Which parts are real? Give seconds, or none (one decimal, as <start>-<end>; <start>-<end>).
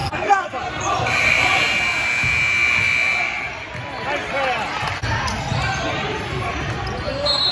0.5-7.5